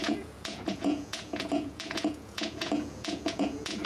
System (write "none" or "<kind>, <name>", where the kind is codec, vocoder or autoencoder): vocoder, Vocos